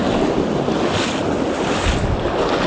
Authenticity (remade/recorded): recorded